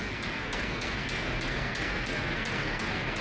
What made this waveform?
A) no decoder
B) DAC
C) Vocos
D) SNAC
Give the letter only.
D